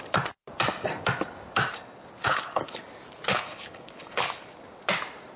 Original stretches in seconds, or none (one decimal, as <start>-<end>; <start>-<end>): 0.0-2.2; 2.8-3.3; 4.3-5.4